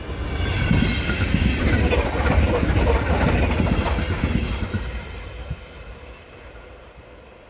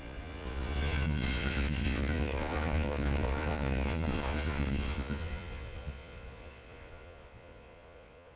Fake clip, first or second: second